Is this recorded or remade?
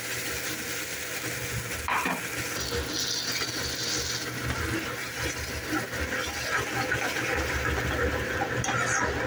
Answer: recorded